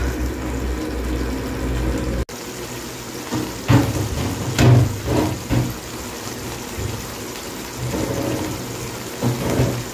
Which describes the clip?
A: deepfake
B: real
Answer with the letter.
B